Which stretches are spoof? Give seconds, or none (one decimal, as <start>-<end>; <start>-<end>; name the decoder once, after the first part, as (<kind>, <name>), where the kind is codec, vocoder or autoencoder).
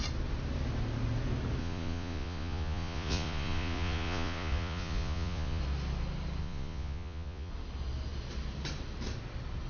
1.6-5.6 (vocoder, Vocos); 6.4-7.5